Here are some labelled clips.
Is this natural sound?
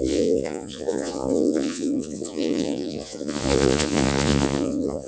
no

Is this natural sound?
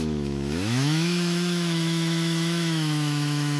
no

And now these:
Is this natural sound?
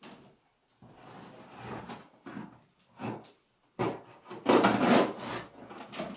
yes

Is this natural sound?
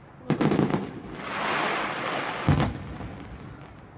yes